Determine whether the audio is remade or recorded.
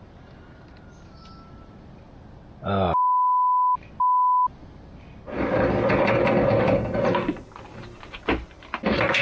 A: recorded